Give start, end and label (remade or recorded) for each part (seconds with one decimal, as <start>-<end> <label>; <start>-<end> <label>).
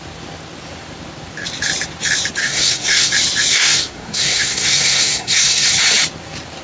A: 0.0-2.4 recorded; 2.4-3.1 remade; 3.1-3.5 recorded; 3.5-5.7 remade; 5.7-6.6 recorded